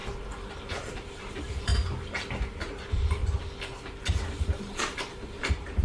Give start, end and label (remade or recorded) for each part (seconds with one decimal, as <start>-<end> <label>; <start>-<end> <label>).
0.0-0.7 recorded; 0.7-1.7 remade; 1.7-2.6 recorded; 2.6-3.2 remade; 3.2-4.6 recorded; 4.6-5.8 remade